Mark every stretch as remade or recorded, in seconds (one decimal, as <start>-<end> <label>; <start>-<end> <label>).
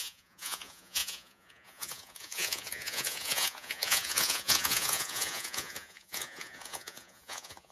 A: 0.0-7.7 remade